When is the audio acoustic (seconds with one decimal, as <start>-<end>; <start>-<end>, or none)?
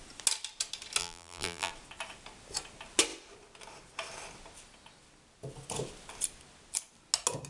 0.0-1.0; 1.7-7.5